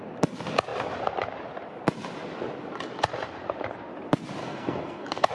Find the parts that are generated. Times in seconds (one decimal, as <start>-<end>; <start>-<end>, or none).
4.4-5.3